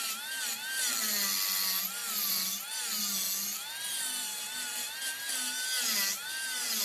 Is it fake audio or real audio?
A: real